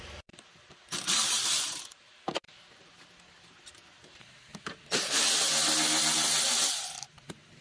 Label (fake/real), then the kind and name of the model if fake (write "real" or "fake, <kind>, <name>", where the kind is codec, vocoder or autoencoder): fake, vocoder, BigVGAN v2